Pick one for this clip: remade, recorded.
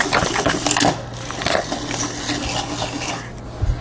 recorded